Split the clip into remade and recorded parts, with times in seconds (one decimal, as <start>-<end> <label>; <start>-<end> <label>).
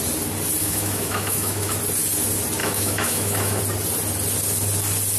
0.0-0.6 recorded; 0.6-1.8 remade; 1.8-2.6 recorded; 2.6-3.6 remade; 3.6-5.2 recorded